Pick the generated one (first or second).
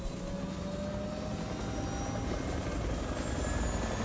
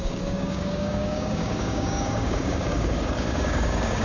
second